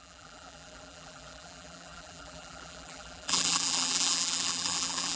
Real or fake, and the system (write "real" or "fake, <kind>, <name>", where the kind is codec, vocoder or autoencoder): fake, vocoder, BigVGAN v2